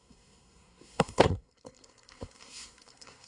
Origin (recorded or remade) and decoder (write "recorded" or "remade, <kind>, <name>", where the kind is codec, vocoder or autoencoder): remade, codec, SNAC